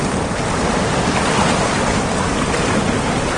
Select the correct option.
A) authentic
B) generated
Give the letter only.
A